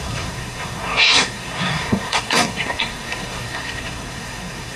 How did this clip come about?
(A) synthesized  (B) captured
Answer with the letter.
A